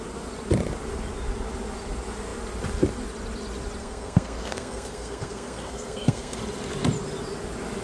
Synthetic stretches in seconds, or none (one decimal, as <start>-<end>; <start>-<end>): 3.8-6.4